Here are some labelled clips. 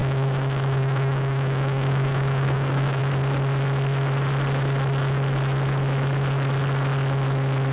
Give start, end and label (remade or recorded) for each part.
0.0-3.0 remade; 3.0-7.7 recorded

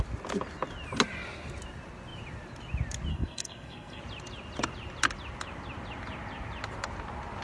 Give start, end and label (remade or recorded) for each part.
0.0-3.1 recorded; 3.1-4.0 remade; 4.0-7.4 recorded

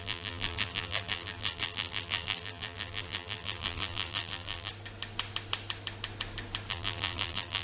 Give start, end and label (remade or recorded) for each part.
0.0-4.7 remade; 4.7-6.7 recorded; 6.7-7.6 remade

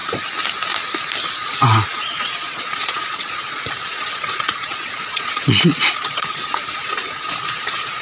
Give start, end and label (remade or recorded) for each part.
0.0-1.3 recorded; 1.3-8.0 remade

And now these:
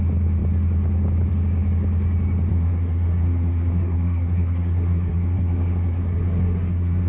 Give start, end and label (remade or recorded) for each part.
0.0-2.5 recorded; 2.5-7.1 remade